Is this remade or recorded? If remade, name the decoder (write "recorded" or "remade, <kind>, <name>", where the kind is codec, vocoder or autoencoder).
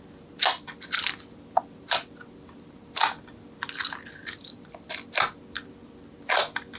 recorded